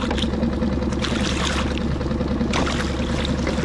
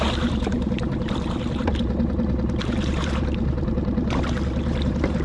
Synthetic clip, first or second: second